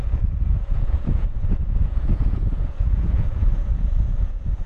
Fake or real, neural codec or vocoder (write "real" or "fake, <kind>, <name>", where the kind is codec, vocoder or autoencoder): fake, vocoder, Vocos